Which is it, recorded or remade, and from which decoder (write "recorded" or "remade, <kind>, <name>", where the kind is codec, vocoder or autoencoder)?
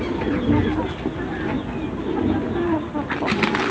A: recorded